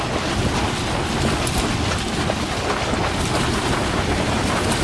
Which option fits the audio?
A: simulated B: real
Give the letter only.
B